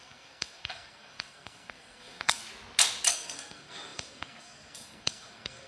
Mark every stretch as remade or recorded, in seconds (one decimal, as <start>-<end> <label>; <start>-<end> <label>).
0.0-2.4 remade; 2.4-3.1 recorded; 3.1-5.7 remade